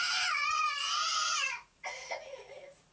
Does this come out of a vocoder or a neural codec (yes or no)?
yes